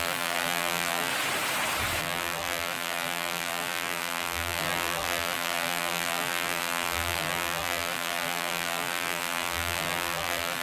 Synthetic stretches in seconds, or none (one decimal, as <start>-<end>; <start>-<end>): 0.0-1.1; 2.0-10.6